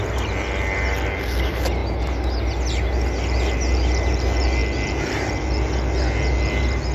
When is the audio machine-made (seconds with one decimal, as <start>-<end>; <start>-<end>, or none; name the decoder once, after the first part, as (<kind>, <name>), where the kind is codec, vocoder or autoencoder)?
none